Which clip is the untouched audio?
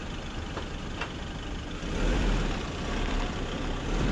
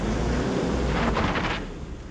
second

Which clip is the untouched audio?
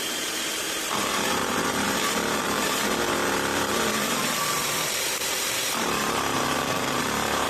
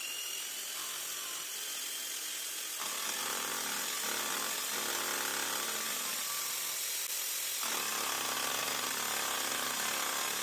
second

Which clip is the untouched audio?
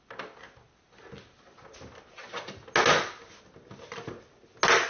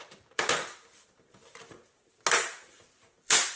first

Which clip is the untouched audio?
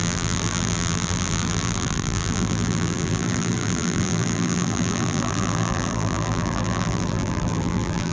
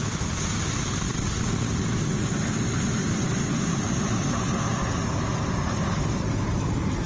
second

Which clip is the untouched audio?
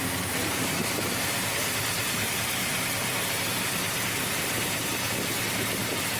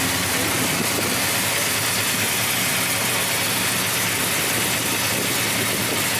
second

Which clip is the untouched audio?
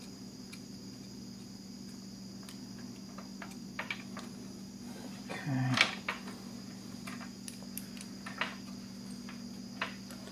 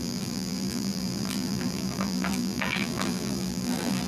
first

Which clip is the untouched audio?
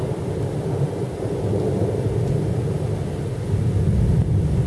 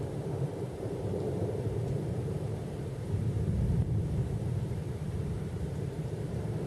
first